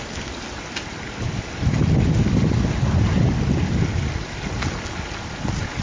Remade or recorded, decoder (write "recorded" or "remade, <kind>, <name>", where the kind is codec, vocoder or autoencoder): recorded